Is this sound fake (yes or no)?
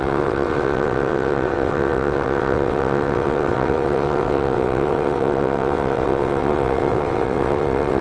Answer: yes